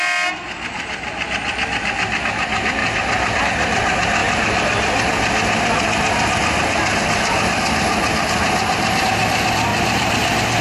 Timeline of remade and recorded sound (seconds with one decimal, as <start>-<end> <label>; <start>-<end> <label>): 0.0-2.8 recorded; 2.8-3.4 remade; 3.4-9.7 recorded; 9.7-10.6 remade